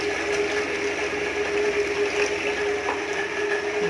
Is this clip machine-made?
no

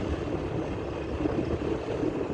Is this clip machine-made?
no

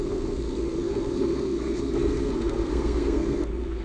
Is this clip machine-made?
yes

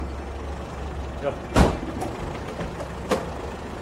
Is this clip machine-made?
no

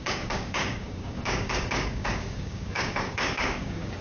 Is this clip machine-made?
yes